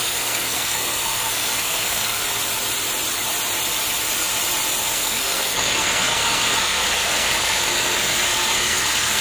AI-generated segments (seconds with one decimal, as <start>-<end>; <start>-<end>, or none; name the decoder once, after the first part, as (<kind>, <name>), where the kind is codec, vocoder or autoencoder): 0.0-2.2 (codec, SNAC); 4.8-9.2